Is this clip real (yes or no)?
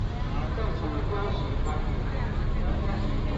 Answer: yes